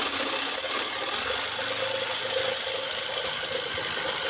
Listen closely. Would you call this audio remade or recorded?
recorded